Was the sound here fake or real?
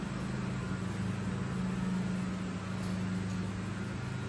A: real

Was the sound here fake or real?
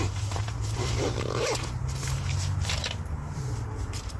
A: fake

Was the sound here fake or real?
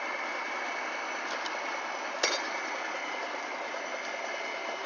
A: real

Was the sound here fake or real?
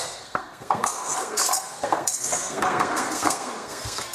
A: fake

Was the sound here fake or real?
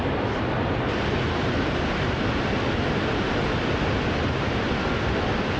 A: real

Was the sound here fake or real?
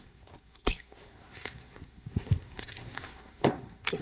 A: fake